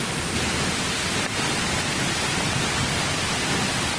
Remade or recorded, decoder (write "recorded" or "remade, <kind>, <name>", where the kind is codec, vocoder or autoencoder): recorded